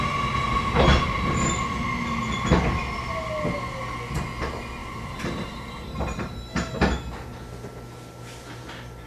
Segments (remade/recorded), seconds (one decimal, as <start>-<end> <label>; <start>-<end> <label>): 0.0-4.8 recorded; 4.8-6.7 remade; 6.7-9.1 recorded